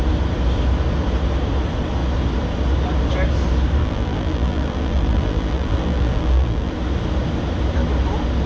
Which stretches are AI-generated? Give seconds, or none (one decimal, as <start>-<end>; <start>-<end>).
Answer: 3.8-6.7